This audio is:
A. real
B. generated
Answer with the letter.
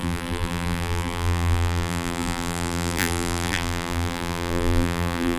B